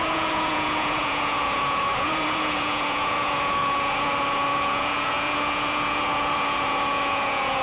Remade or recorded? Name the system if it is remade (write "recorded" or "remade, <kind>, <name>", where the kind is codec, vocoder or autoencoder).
remade, vocoder, Vocos